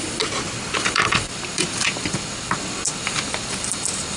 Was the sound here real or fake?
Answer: real